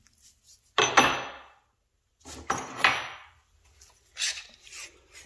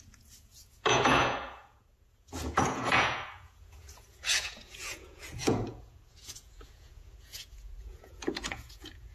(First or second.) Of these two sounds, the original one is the first